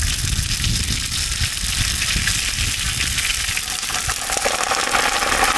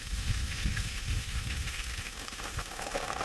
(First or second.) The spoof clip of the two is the second